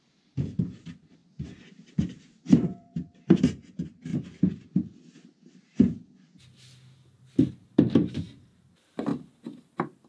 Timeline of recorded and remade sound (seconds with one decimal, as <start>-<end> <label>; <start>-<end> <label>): 0.0-1.2 remade; 1.2-2.2 recorded; 2.2-4.1 remade; 4.1-7.5 recorded; 7.5-9.1 remade; 9.1-10.1 recorded